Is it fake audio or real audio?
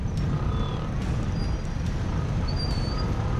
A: real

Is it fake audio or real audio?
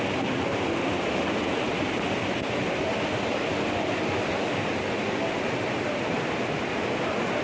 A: real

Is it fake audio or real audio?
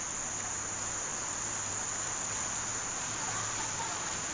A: real